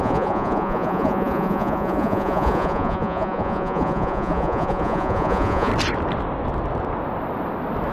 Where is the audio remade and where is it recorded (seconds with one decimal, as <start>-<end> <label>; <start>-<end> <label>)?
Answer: 0.0-5.7 remade; 5.7-7.9 recorded